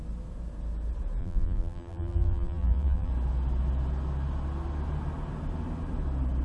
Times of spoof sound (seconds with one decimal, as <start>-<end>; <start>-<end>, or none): 1.2-3.1